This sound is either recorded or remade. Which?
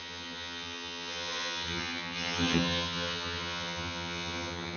remade